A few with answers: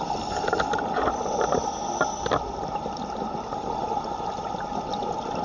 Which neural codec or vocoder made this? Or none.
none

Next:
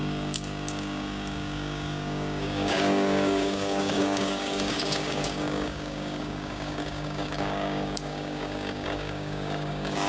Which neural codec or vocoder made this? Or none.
codec, DAC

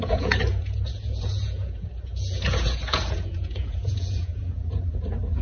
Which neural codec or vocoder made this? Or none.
vocoder, Vocos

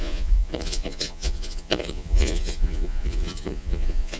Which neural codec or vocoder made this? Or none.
vocoder, Vocos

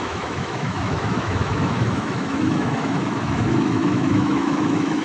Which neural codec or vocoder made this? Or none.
autoencoder, DAC-VAE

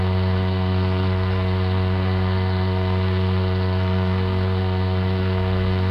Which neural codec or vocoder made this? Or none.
codec, SNAC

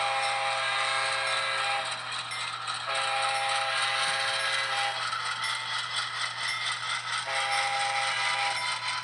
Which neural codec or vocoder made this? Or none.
none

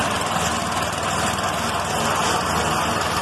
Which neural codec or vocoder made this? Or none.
none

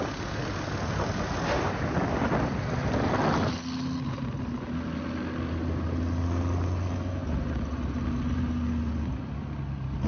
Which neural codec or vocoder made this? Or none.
none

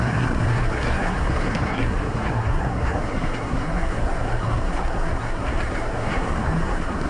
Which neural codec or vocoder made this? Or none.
codec, SNAC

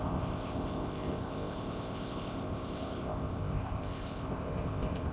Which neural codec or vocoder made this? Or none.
codec, ZipCodec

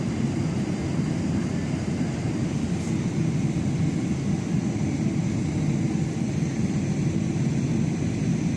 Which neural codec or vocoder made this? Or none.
none